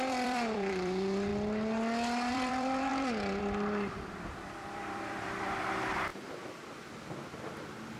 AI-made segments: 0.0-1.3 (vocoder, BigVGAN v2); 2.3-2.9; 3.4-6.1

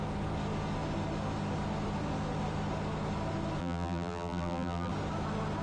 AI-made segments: 3.6-4.9 (vocoder, BigVGAN v2)